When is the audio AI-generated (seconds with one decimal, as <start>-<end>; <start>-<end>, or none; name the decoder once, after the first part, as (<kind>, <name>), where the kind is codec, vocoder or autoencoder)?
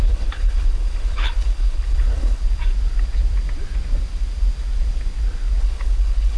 0.0-2.4 (codec, HILCodec); 5.6-6.4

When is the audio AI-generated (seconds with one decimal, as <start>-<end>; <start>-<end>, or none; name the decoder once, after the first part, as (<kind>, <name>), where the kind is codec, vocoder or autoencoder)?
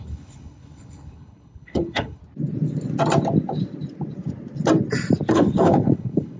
0.0-2.2 (codec, HILCodec); 5.3-6.4